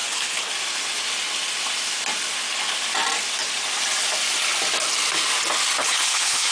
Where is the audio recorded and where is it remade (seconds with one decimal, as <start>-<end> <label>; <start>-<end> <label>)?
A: 0.0-0.5 remade; 0.5-5.8 recorded; 5.8-6.5 remade